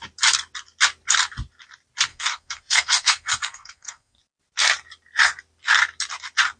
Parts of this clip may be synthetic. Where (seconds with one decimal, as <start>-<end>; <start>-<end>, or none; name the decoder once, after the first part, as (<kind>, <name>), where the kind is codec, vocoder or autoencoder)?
2.1-4.2 (codec, SNAC)